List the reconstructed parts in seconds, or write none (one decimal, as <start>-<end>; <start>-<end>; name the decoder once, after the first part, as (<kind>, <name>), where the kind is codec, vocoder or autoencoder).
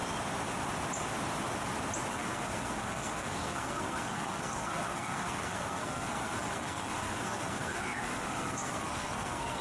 2.1-9.6 (codec, SNAC)